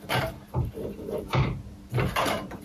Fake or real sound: fake